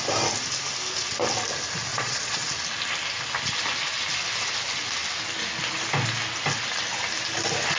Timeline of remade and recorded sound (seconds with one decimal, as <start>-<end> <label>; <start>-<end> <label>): 0.0-1.9 recorded; 1.9-2.5 remade; 2.5-7.8 recorded